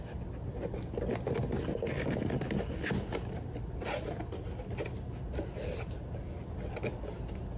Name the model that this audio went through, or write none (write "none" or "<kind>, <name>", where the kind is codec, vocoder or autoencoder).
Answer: none